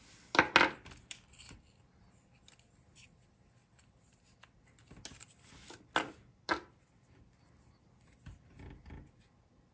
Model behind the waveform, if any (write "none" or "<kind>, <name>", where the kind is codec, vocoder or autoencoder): none